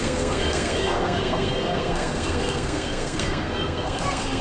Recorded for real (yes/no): no